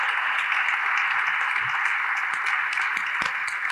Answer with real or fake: real